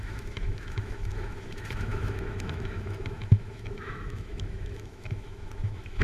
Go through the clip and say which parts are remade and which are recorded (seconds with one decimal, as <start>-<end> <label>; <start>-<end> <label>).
0.0-6.0 remade